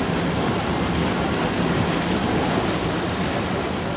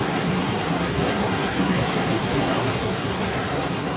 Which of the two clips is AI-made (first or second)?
second